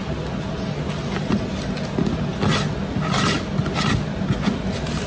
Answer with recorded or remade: recorded